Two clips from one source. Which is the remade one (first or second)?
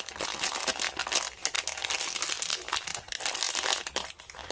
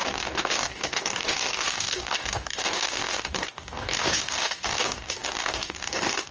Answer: second